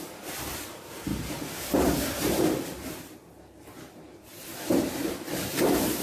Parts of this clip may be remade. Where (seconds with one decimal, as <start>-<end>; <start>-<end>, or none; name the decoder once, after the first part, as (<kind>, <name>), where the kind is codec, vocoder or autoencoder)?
1.1-2.4 (vocoder, BigVGAN v2); 4.5-5.1